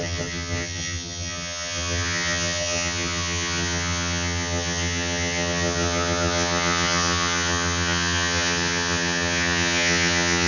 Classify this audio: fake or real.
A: fake